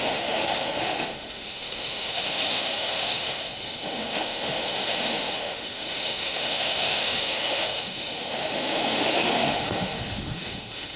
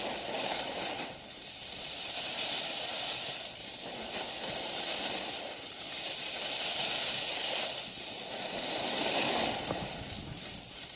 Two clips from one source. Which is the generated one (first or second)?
first